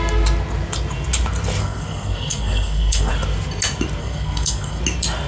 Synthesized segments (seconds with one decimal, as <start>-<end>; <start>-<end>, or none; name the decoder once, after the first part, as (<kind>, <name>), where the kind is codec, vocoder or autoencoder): 1.6-3.1 (codec, SNAC); 4.0-4.8